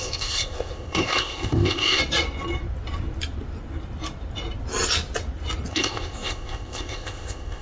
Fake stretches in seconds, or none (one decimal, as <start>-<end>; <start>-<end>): 0.0-2.0; 5.7-7.6